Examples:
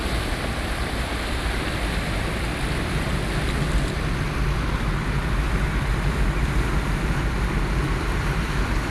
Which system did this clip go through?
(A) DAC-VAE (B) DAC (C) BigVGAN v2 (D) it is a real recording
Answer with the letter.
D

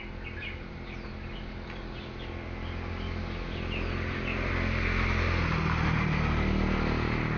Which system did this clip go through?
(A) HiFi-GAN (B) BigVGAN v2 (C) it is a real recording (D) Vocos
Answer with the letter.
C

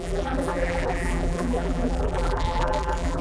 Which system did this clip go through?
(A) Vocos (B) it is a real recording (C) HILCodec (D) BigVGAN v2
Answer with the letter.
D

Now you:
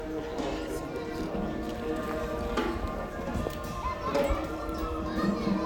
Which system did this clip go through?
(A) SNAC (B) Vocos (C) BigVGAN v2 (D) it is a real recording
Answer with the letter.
C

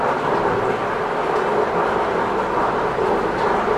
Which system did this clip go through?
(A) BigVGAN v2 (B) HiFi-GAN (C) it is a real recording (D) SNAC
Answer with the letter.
C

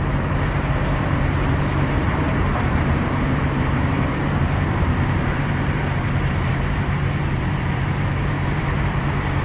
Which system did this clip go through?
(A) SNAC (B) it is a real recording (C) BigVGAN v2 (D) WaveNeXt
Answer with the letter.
C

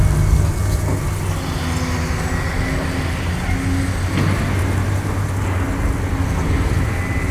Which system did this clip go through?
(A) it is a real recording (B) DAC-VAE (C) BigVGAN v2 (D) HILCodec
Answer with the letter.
A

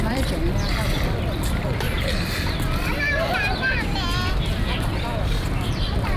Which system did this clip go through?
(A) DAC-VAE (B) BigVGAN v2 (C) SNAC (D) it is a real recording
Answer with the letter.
B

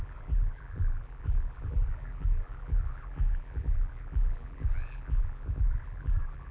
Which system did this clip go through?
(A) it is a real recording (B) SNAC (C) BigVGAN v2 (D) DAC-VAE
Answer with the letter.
C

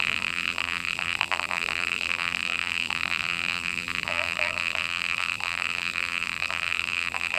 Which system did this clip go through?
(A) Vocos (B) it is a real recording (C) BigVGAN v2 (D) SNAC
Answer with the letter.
C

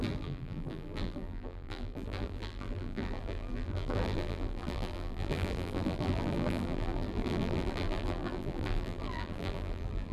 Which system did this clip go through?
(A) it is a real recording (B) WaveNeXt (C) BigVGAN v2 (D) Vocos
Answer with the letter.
C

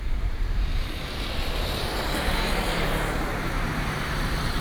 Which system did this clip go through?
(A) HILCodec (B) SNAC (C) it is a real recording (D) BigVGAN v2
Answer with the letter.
D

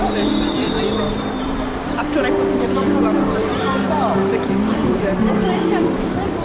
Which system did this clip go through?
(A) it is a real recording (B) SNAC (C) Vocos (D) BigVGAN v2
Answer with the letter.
D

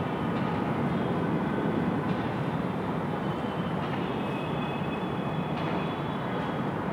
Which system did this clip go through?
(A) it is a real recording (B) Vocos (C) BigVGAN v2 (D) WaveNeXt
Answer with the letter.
C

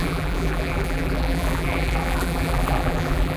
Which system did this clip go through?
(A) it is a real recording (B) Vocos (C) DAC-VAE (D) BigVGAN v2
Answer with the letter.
D